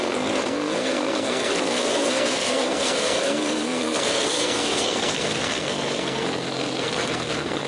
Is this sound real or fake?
fake